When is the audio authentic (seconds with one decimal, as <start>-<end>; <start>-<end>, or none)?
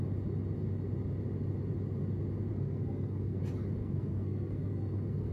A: 0.0-2.5; 3.4-3.8